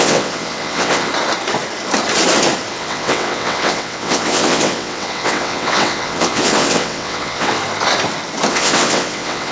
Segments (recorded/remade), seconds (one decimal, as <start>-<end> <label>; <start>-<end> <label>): 0.0-1.1 remade; 1.1-2.7 recorded; 2.7-7.6 remade; 7.6-8.5 recorded; 8.5-9.5 remade

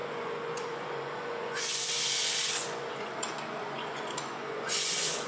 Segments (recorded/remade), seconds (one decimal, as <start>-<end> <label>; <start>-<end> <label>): 0.0-1.8 remade; 1.8-2.6 recorded; 2.6-5.3 remade

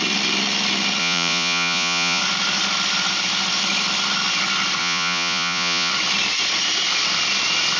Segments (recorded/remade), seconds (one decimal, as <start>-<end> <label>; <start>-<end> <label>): 0.0-1.0 recorded; 1.0-2.2 remade; 2.2-4.8 recorded; 4.8-5.9 remade; 5.9-7.8 recorded

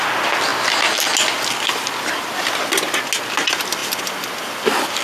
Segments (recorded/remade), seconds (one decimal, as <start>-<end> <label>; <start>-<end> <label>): 0.0-5.0 recorded

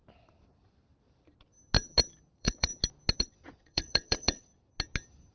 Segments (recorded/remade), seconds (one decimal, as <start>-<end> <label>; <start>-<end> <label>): 0.0-2.3 recorded; 2.3-2.7 remade; 2.7-3.2 recorded; 3.2-4.5 remade; 4.5-5.3 recorded

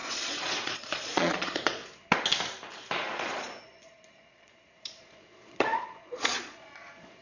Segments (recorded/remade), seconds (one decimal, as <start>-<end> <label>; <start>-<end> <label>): 0.0-1.8 remade; 1.8-3.0 recorded; 3.0-7.2 remade

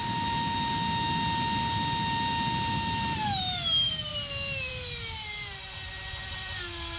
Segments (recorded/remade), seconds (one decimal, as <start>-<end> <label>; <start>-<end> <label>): 0.0-7.0 recorded

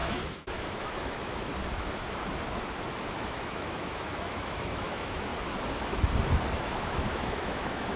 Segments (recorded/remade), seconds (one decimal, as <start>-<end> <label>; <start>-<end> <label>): 0.0-1.5 remade; 1.5-2.9 recorded; 2.9-5.3 remade; 5.3-6.6 recorded; 6.6-8.0 remade